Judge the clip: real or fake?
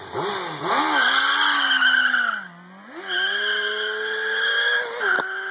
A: real